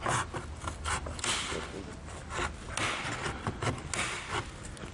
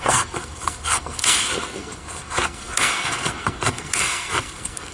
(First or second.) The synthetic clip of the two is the second